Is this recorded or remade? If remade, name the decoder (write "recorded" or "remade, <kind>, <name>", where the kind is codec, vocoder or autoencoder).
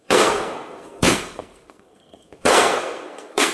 remade, codec, SNAC